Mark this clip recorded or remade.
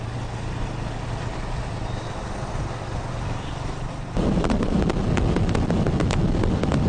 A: recorded